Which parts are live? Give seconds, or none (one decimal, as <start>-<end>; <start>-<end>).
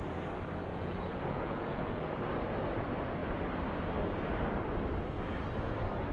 0.0-0.7; 2.0-6.1